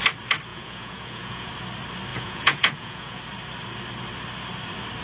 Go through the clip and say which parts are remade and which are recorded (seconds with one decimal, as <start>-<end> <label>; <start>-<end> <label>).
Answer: 0.0-0.5 recorded; 0.5-1.5 remade; 1.5-2.1 recorded; 2.1-3.2 remade; 3.2-5.0 recorded